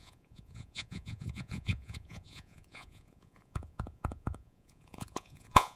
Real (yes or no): no